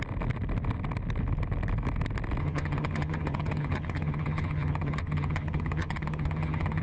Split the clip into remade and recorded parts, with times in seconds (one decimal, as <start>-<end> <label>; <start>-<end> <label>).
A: 0.0-2.4 recorded; 2.4-6.8 remade